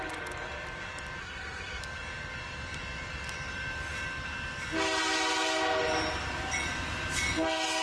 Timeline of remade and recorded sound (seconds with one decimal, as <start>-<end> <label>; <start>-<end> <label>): 0.0-1.2 recorded; 1.2-1.8 remade; 1.8-7.8 recorded